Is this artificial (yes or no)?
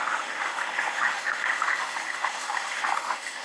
yes